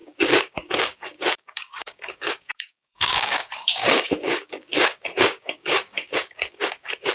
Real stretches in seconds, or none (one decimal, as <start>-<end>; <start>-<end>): none